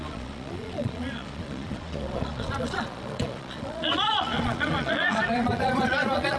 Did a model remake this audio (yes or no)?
yes